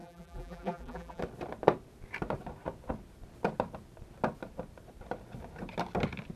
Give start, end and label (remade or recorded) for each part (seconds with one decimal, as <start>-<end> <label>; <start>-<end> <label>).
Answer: 0.0-1.2 remade; 1.2-6.4 recorded